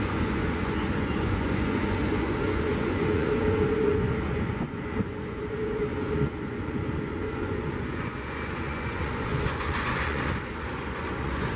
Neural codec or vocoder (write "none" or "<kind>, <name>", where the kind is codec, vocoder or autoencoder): vocoder, Vocos